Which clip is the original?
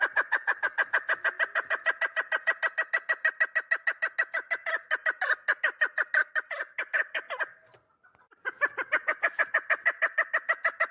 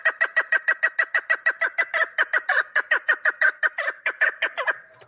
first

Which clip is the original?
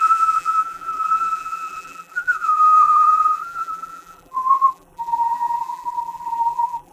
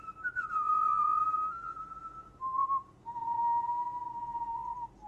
second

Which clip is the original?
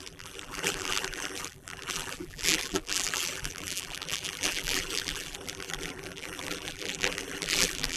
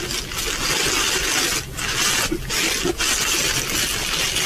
second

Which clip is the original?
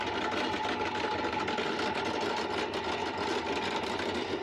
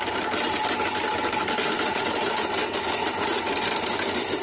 first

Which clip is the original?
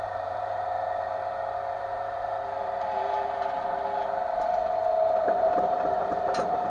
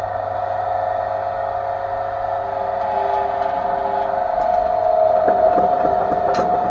second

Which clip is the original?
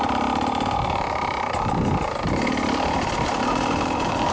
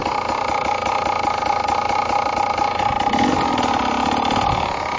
second